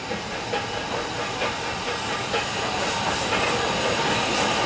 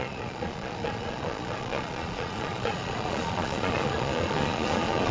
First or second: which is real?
first